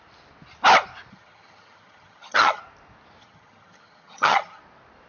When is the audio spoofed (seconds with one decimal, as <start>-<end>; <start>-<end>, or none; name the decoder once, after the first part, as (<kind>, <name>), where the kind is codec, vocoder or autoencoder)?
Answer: 1.1-2.6 (vocoder, HiFi-GAN); 3.2-4.6